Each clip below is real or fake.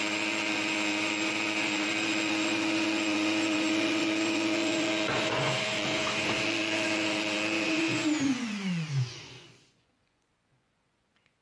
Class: fake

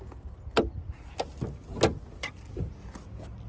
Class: real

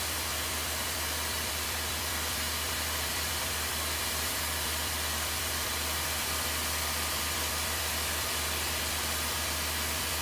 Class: fake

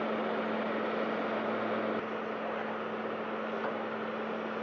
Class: real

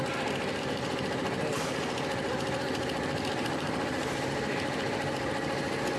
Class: real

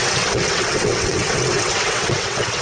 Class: fake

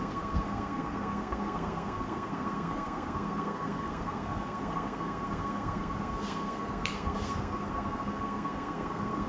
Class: fake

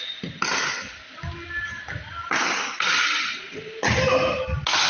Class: real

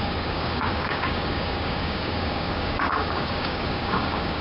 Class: fake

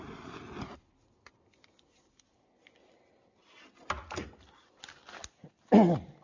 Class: real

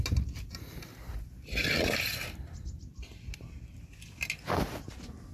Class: real